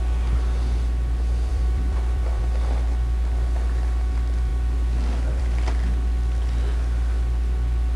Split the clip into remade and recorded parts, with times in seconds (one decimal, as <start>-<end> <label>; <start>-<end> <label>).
0.0-1.5 recorded; 1.5-2.4 remade; 2.4-8.0 recorded